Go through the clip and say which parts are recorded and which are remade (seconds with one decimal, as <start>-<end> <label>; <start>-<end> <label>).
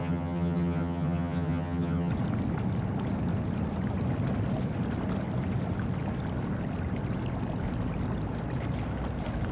0.0-2.1 remade; 2.1-9.5 recorded